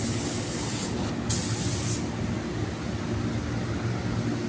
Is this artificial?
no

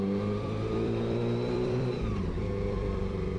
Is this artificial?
yes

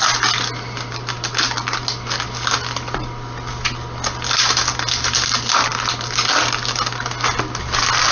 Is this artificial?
no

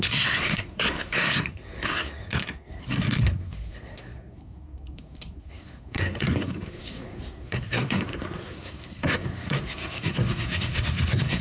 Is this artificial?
yes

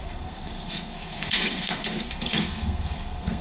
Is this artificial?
yes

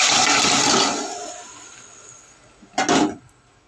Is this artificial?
no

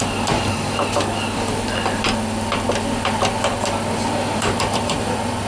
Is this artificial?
no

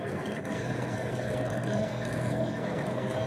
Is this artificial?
yes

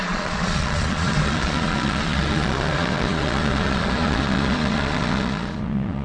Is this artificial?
yes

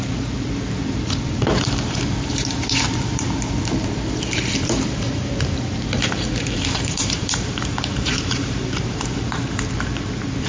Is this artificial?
yes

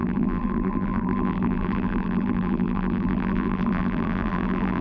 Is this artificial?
yes